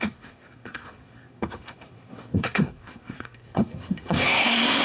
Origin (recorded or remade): remade